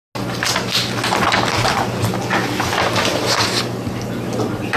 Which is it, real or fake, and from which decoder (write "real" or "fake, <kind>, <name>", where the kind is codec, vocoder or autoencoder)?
real